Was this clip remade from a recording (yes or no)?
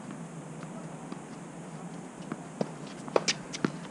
no